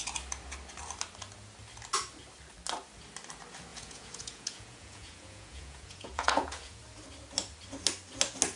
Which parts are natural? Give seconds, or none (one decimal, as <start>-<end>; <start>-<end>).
0.0-3.7; 6.8-8.6